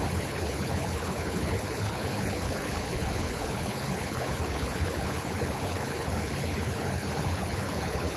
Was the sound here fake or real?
fake